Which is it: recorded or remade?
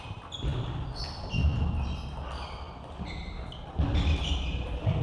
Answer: recorded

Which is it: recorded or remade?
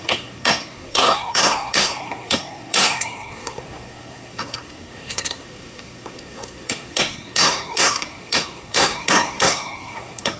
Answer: remade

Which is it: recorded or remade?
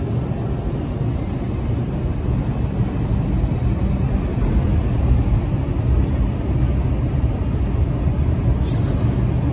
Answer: recorded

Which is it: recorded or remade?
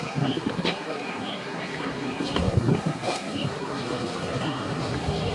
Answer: remade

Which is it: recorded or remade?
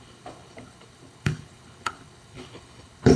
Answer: remade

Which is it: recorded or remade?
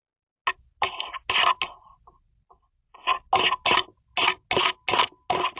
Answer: recorded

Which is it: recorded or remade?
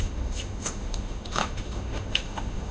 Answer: remade